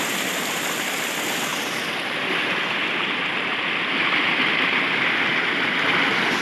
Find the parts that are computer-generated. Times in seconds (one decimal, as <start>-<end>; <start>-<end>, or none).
none